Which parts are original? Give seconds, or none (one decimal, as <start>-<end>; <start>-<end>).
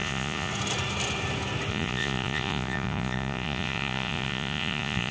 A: 0.5-1.7